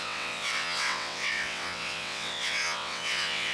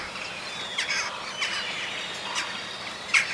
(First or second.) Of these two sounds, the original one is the second